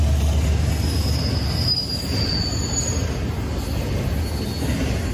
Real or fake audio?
real